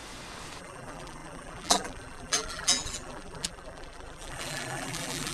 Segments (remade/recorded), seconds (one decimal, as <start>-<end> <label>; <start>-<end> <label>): 0.0-0.6 recorded; 0.6-5.3 remade